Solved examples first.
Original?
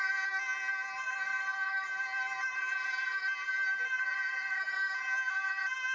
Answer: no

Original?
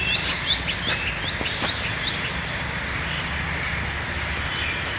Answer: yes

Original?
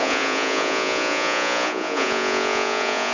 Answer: no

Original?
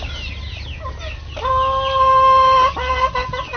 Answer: yes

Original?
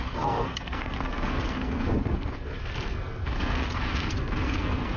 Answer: no